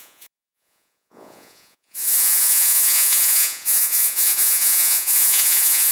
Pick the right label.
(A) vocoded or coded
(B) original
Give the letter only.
A